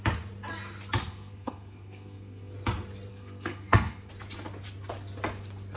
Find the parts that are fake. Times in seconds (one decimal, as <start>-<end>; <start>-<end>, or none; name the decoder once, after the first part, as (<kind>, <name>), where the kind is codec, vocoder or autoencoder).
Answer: 1.0-2.5 (codec, SNAC); 3.1-4.1

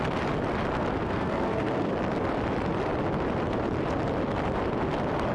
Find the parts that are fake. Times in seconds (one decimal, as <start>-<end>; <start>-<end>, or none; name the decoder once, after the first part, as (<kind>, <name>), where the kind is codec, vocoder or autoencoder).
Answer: 1.0-1.9 (codec, SNAC)

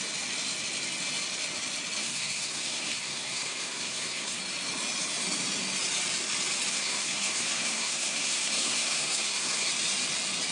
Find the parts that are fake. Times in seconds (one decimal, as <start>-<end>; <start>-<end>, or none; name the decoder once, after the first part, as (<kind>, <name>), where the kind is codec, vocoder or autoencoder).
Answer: 2.0-4.4 (codec, SNAC); 6.7-9.7

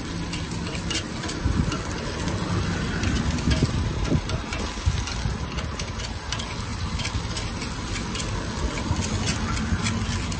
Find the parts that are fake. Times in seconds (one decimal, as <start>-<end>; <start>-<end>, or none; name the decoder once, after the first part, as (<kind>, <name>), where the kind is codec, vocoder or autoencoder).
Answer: none

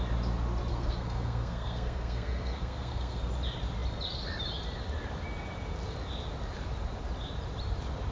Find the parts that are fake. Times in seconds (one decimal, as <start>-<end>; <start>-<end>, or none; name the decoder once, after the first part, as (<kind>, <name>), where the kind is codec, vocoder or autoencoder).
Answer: 0.7-3.2 (codec, SNAC)

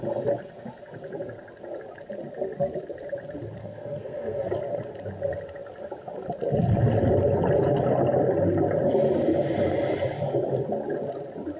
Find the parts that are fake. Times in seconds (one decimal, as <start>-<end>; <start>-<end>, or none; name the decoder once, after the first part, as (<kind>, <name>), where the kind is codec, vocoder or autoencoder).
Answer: 3.6-4.5 (codec, SNAC)

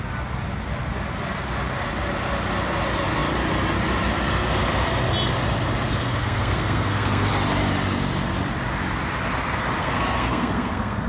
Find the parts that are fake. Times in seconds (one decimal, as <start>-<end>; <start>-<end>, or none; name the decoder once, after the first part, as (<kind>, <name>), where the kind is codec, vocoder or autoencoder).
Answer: 6.0-7.3 (codec, SNAC); 9.8-11.1